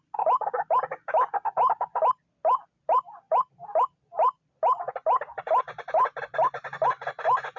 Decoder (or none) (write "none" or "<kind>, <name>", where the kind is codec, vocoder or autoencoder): none